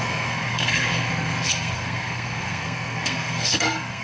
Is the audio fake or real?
fake